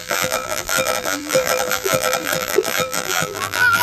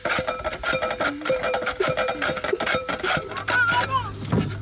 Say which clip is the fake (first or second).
first